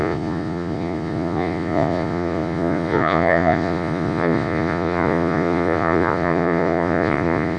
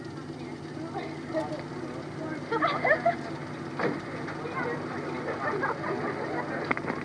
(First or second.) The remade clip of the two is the first